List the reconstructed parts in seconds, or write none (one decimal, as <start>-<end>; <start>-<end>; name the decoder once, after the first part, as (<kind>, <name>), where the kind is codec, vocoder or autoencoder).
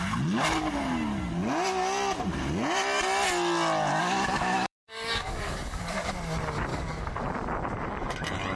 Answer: 4.0-6.1 (codec, DAC); 6.7-7.2